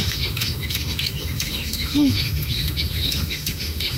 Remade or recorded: remade